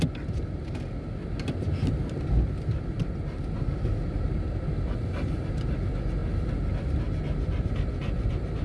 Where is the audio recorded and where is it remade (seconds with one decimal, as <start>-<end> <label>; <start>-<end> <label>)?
0.0-8.6 recorded